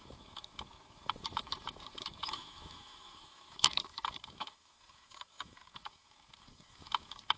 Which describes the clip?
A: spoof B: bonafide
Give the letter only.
A